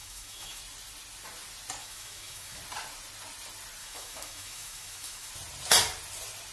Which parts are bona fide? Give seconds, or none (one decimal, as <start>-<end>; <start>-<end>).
0.6-1.8; 2.6-3.8; 5.3-6.5